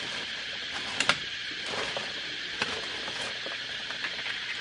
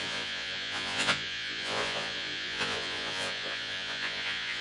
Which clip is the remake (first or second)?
second